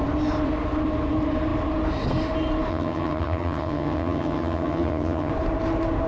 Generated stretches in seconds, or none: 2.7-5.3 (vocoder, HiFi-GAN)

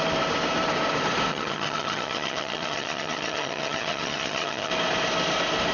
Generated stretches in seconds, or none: 1.3-4.7 (vocoder, HiFi-GAN)

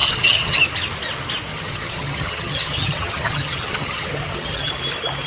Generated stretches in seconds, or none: 0.0-0.6 (vocoder, HiFi-GAN); 1.5-4.7

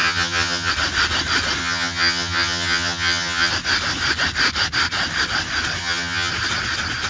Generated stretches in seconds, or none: 0.0-0.7 (vocoder, HiFi-GAN); 1.6-3.5; 5.8-6.3

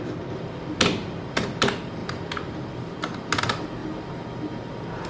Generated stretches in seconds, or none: none

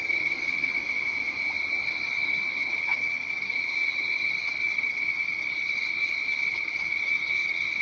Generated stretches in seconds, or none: 0.0-0.8 (vocoder, HiFi-GAN); 1.7-7.8

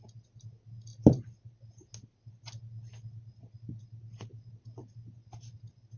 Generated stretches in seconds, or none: none

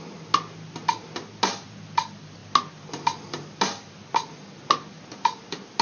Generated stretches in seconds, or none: none